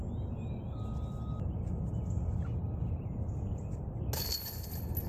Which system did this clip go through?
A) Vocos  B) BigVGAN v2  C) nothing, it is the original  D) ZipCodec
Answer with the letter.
C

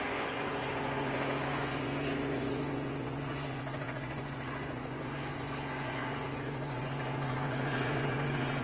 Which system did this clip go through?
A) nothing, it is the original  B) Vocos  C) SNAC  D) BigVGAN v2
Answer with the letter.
B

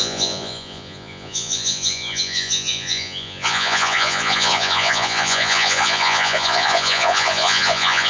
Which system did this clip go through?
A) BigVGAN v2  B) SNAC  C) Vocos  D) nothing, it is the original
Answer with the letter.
C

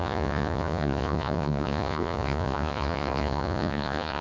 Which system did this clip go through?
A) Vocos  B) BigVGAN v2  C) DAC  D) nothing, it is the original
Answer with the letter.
A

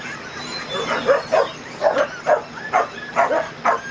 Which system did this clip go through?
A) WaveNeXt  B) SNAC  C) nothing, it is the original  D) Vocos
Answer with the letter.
C